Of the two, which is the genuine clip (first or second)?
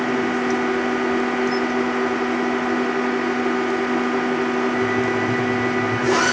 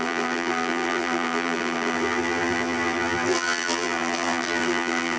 first